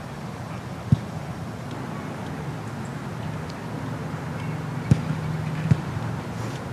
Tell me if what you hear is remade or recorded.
recorded